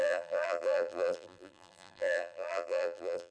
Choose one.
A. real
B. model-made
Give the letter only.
B